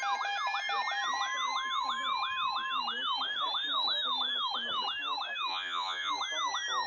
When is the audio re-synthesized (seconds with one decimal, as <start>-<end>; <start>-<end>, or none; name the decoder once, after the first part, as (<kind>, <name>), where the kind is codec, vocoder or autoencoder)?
5.5-6.1 (vocoder, Vocos)